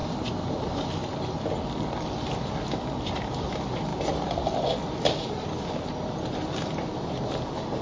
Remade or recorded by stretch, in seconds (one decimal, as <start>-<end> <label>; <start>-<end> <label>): 0.0-1.0 remade; 1.0-2.7 recorded; 2.7-3.9 remade; 3.9-7.3 recorded; 7.3-7.8 remade